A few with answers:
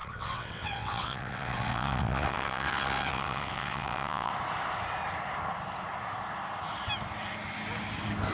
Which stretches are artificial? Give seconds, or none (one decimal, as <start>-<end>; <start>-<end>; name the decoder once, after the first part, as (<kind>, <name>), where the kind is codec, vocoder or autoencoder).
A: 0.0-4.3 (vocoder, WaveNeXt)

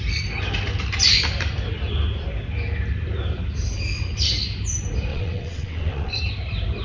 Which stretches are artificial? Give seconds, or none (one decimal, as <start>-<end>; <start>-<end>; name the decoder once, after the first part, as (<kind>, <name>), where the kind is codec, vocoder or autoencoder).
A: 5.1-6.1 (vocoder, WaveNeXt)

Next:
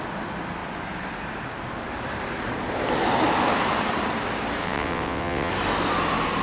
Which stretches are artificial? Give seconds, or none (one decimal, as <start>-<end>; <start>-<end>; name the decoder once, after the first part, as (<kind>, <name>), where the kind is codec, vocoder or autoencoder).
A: 4.6-5.5 (vocoder, WaveNeXt)